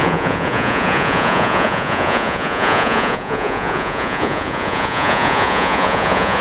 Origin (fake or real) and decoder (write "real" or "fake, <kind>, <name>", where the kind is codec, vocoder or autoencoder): fake, vocoder, Vocos